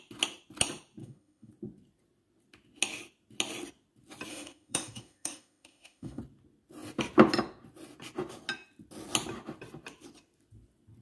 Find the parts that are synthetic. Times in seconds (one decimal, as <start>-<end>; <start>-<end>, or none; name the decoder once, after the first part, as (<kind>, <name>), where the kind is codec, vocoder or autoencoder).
1.0-1.5 (autoencoder, DAC-VAE); 4.3-6.2